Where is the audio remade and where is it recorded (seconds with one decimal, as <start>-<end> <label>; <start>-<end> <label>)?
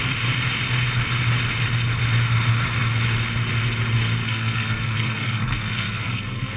0.0-4.2 recorded; 4.2-6.6 remade